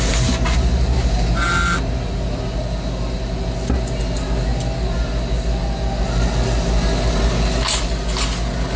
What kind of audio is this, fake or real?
real